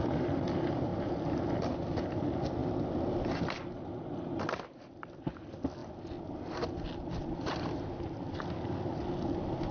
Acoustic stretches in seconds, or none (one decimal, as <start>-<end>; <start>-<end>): 0.0-9.7